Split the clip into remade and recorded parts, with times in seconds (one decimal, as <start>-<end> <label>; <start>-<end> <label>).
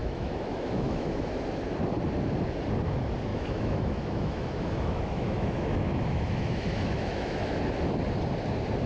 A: 0.0-1.3 remade; 1.3-3.3 recorded; 3.3-7.6 remade; 7.6-8.9 recorded